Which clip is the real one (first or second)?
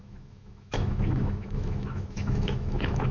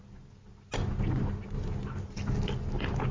second